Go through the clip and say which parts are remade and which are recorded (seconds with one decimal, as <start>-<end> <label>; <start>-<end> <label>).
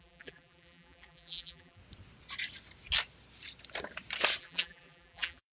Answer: 0.0-1.8 remade; 1.8-4.4 recorded; 4.4-5.5 remade